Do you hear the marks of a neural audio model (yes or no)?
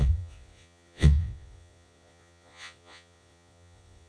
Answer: yes